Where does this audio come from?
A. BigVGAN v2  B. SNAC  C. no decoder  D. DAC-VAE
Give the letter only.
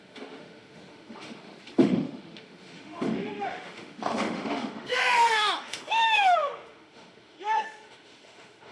D